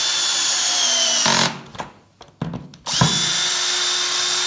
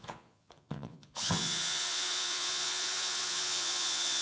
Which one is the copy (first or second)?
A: second